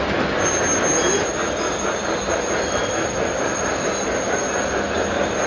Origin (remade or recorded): recorded